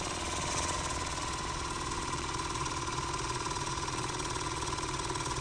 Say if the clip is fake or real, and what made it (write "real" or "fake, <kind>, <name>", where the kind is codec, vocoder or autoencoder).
fake, vocoder, Vocos